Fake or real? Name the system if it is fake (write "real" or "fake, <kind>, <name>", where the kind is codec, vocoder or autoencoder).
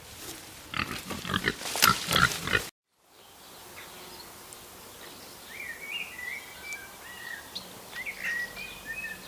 real